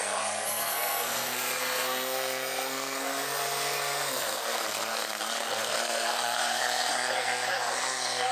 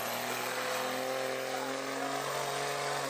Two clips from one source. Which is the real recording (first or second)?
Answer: second